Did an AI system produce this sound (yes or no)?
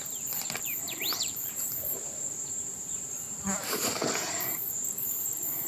yes